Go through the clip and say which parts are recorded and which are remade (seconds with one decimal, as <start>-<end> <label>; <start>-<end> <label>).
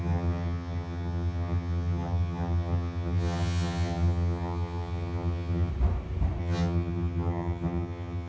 0.0-5.7 remade; 5.7-6.4 recorded; 6.4-8.3 remade